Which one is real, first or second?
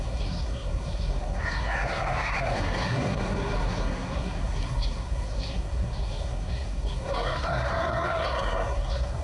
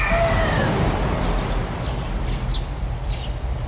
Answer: second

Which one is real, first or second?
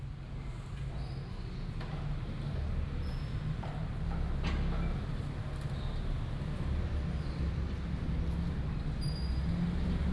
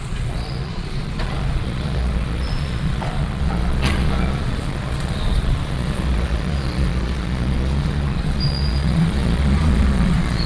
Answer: first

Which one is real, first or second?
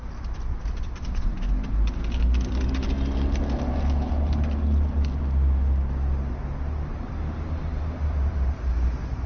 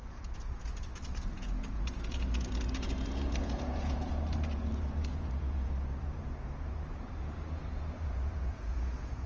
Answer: first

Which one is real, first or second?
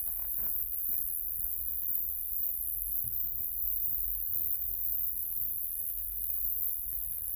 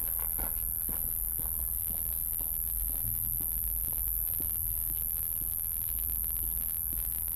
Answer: second